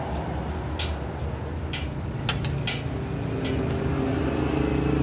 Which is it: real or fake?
real